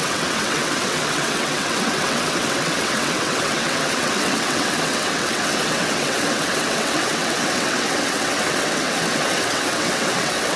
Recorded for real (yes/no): no